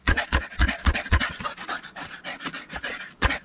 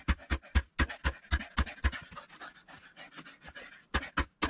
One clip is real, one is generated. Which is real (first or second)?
second